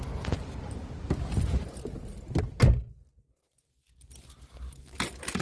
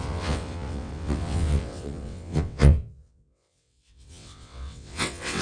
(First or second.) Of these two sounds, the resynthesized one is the second